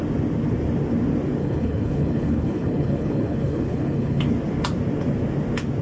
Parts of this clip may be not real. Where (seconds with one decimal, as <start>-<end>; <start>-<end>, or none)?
1.4-4.2